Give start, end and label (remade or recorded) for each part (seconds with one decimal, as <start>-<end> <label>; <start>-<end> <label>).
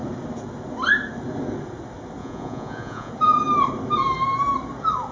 0.0-2.2 recorded; 2.2-3.1 remade; 3.1-5.1 recorded